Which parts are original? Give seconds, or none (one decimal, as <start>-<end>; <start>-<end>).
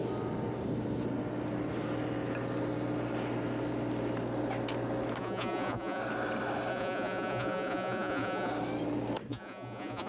0.0-5.2; 6.0-6.7; 8.5-9.3